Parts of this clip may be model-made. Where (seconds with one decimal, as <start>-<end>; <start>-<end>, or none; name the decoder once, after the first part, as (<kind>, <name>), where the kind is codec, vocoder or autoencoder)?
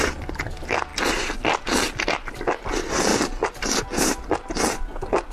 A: none